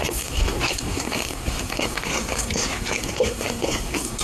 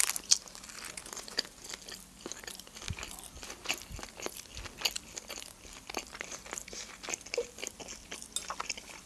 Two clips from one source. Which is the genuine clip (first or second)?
second